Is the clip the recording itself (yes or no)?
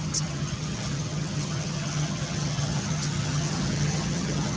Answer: no